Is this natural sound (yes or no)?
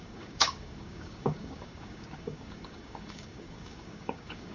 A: no